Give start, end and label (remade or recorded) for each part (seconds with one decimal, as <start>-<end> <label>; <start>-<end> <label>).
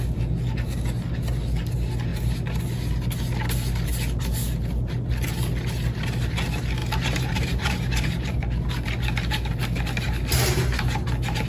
0.0-6.8 recorded; 6.8-8.4 remade; 8.4-11.5 recorded